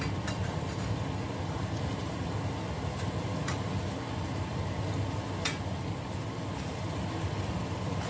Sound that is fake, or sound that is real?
real